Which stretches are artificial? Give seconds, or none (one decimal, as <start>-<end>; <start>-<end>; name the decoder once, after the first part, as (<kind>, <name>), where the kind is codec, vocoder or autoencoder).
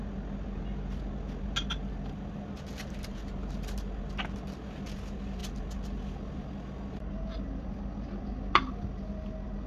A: none